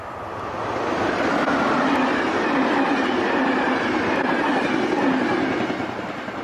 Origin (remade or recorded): recorded